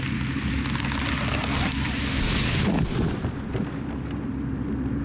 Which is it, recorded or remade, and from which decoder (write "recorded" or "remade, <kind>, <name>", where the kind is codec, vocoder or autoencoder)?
recorded